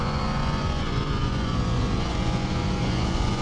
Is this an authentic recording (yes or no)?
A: no